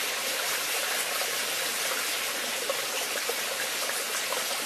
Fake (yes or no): no